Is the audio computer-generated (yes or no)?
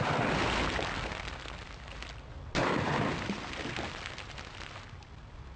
no